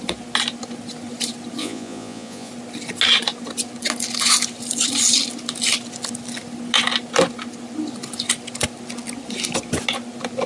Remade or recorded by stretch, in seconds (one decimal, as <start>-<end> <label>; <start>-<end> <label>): 0.0-1.6 recorded; 1.6-2.5 remade; 2.5-10.5 recorded